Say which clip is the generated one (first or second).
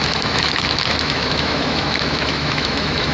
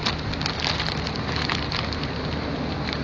first